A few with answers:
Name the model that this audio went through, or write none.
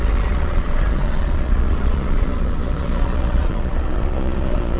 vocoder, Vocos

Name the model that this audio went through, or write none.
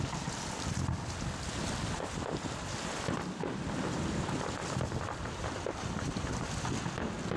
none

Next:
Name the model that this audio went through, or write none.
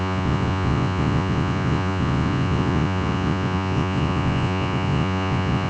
vocoder, Vocos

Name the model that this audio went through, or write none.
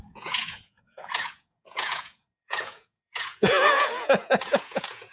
vocoder, Vocos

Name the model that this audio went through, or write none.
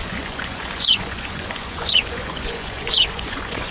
vocoder, Vocos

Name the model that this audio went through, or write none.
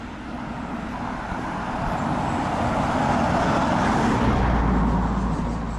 none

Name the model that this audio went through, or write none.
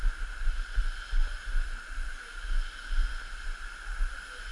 none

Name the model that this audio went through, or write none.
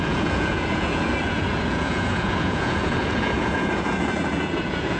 vocoder, Vocos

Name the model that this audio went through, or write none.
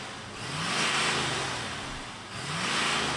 none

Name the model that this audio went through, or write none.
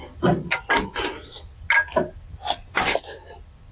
none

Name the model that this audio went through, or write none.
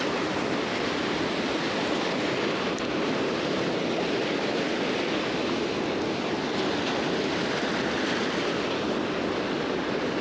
none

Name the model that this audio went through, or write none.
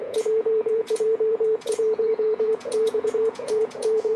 vocoder, Vocos